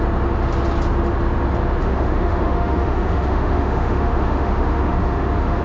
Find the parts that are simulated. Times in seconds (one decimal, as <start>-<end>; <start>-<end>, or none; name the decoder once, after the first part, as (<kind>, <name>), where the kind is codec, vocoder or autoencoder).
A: 1.8-5.6 (autoencoder, DAC-VAE)